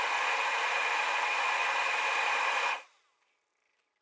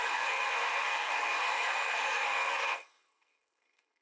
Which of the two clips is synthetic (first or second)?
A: second